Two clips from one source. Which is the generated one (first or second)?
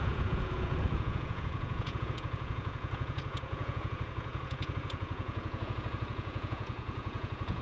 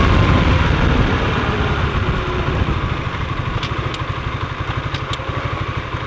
first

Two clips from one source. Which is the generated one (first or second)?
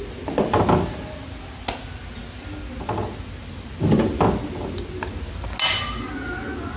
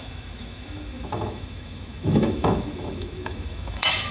second